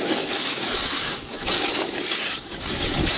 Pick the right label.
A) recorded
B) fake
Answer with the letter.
B